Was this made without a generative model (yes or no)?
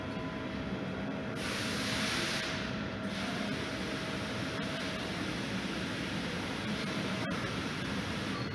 yes